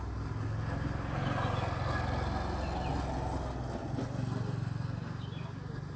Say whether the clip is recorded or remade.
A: recorded